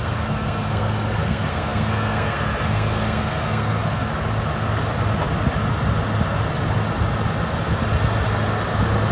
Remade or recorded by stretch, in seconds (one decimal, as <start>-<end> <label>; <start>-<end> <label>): 0.0-4.1 remade; 4.1-9.1 recorded